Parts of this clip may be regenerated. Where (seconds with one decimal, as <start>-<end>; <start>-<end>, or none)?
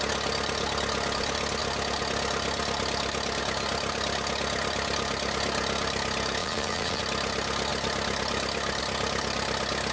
6.4-7.0